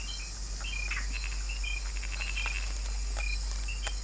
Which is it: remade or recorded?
recorded